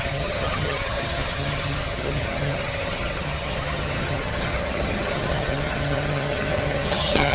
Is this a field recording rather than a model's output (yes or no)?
no